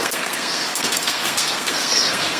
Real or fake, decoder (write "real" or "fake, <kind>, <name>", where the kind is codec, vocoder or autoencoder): fake, codec, SNAC